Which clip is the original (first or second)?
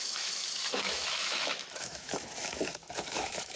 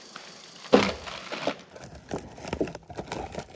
second